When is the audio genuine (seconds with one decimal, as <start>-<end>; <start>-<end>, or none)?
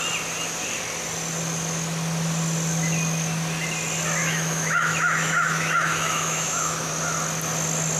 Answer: 0.0-4.2; 6.9-8.0